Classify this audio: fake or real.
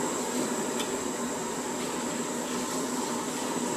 real